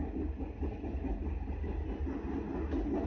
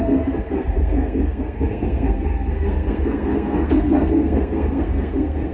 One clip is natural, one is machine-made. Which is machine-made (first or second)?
second